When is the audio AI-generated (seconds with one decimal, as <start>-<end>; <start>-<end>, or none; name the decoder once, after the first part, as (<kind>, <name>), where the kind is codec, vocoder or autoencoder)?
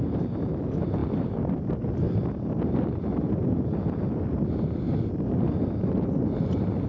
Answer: none